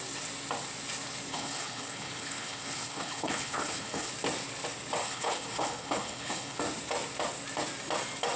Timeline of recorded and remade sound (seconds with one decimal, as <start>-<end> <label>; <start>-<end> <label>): 0.0-1.3 recorded; 1.3-4.1 remade; 4.1-5.0 recorded; 5.0-6.6 remade; 6.6-8.4 recorded